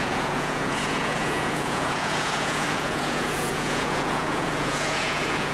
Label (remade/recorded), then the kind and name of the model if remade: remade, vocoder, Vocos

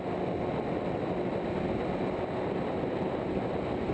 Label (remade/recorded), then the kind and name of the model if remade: recorded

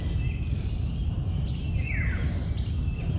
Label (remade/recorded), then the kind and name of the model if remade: recorded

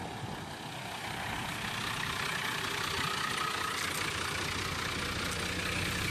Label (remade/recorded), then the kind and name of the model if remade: recorded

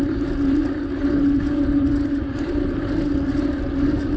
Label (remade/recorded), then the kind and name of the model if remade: recorded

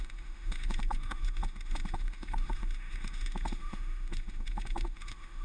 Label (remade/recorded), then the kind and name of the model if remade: remade, autoencoder, DAC-VAE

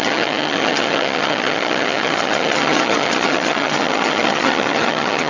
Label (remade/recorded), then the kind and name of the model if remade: remade, vocoder, HiFi-GAN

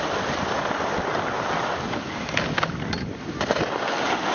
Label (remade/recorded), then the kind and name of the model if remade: recorded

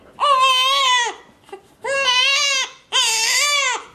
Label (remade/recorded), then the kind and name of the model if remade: recorded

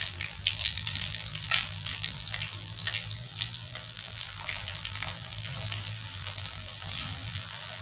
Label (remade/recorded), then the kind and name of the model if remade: remade, vocoder, BigVGAN v2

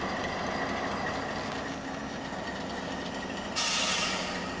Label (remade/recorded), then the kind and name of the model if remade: recorded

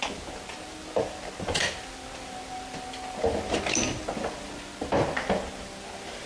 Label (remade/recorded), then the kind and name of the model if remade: recorded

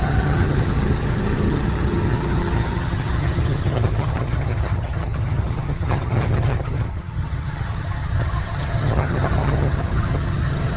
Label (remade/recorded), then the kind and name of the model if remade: remade, vocoder, HiFi-GAN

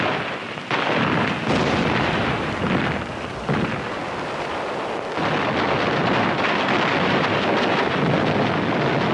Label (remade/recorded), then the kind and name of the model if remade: recorded